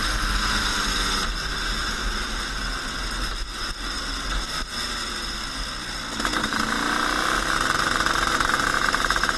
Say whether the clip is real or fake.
real